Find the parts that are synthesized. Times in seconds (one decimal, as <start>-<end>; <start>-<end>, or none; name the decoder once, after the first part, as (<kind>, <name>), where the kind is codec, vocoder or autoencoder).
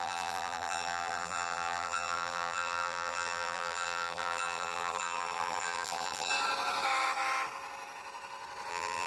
0.0-6.3 (vocoder, BigVGAN v2); 8.7-9.1